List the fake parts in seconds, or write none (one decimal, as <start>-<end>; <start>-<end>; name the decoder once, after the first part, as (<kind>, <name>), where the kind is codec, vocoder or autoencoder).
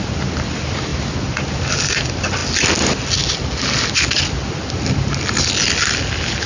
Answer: none